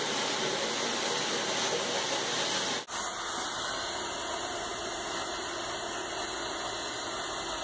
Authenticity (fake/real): real